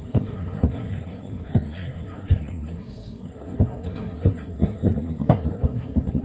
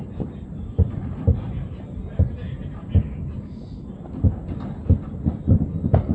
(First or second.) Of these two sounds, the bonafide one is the second